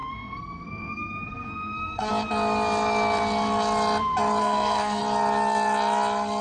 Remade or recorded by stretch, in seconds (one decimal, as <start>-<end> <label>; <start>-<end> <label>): 0.0-2.1 remade; 2.1-4.4 recorded; 4.4-5.0 remade; 5.0-6.4 recorded